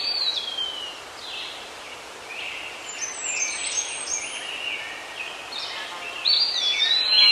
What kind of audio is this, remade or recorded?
recorded